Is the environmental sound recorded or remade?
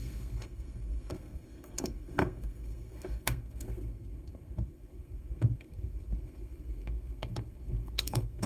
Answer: remade